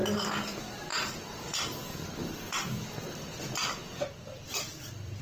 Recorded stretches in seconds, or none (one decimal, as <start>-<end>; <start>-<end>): 0.0-0.5